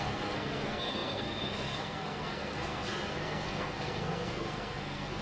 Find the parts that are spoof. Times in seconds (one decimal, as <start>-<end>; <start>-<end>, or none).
0.0-5.2